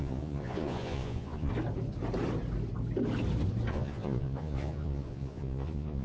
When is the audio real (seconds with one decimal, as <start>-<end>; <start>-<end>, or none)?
1.5-3.7